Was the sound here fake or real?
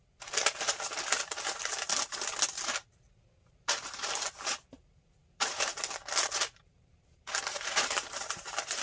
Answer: fake